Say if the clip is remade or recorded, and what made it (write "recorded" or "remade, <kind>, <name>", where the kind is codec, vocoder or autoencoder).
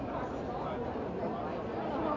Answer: recorded